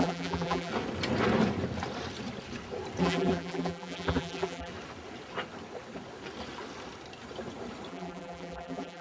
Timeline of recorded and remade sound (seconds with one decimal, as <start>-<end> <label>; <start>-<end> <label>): 0.0-0.7 remade; 0.7-3.0 recorded; 3.0-4.7 remade; 4.7-7.9 recorded; 7.9-9.0 remade